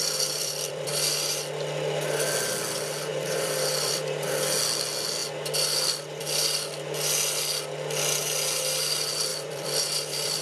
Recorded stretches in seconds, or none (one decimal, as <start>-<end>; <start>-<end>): 0.9-3.1; 4.3-9.3